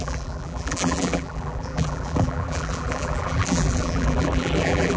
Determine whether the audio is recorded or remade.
remade